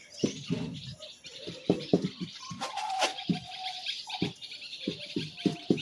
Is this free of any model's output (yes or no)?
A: yes